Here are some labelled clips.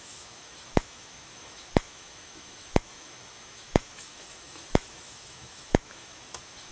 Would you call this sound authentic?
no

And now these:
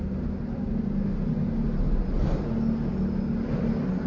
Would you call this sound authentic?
yes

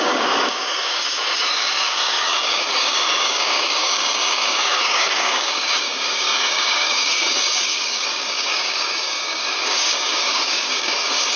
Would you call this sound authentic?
no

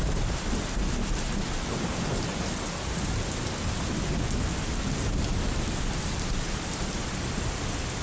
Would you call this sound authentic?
yes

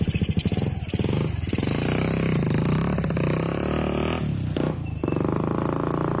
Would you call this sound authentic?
yes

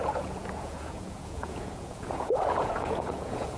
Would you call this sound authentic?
no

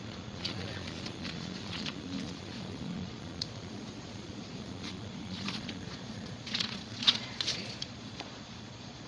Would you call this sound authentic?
no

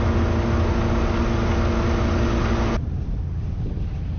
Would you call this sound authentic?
yes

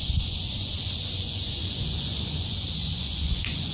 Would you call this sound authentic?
no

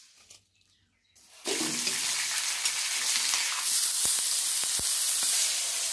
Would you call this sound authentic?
yes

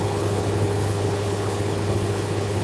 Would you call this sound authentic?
no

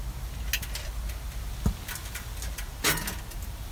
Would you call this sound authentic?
yes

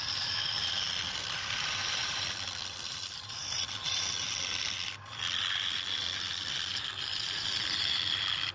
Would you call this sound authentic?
no